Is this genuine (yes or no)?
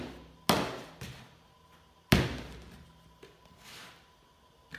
yes